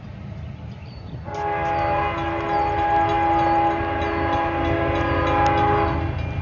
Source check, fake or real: real